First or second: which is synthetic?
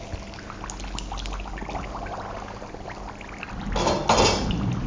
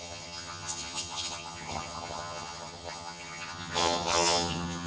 second